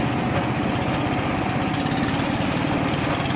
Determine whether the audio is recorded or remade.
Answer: recorded